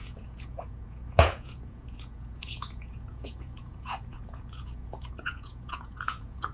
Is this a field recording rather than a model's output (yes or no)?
no